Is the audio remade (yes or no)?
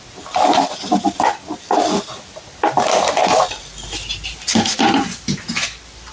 no